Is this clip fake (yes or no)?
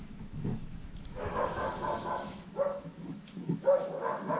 yes